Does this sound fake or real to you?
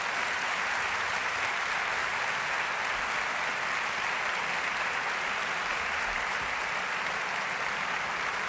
real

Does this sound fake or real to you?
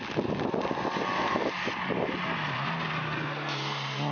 real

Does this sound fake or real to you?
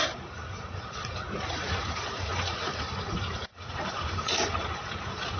fake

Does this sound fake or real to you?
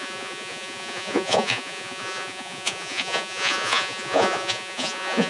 fake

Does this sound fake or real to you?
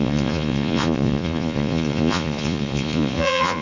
fake